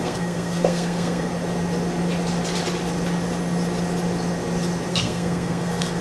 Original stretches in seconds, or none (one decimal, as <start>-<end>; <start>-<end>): 1.3-4.9